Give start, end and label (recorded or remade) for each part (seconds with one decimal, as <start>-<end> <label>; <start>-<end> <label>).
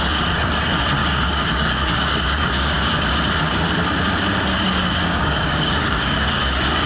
0.0-1.0 recorded; 1.0-3.0 remade; 3.0-4.8 recorded; 4.8-6.9 remade